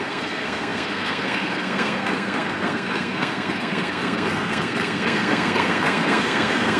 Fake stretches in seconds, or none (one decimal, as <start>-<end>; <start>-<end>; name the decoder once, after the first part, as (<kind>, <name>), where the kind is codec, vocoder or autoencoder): 0.0-6.8 (codec, SNAC)